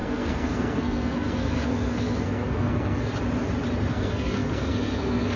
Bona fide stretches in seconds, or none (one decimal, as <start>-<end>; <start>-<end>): 3.1-3.9